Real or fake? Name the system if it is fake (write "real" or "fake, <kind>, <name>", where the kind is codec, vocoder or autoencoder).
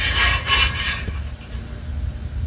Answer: fake, vocoder, BigVGAN v2